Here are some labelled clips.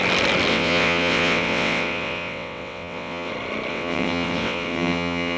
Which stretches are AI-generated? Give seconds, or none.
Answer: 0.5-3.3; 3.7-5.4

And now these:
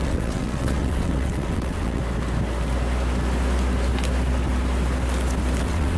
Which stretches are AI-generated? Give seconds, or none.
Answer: 0.0-2.0; 5.6-6.0

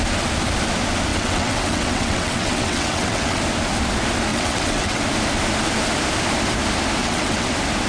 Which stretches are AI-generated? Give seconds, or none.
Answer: 1.1-3.4; 4.3-5.0; 7.0-7.5

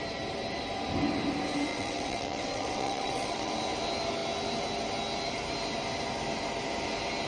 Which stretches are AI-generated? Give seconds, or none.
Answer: 1.7-3.5